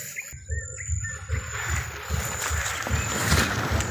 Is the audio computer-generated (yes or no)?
no